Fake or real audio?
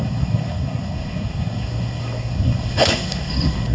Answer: fake